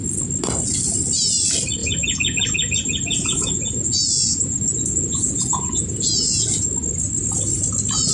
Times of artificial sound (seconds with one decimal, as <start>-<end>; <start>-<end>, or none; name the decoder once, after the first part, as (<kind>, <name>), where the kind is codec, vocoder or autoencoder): 1.8-6.7 (vocoder, Vocos)